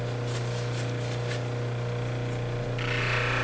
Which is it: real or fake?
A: real